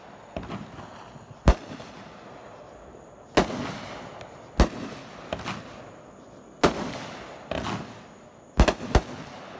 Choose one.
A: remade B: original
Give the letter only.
B